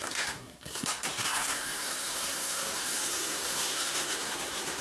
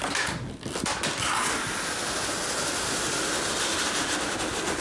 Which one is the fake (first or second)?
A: first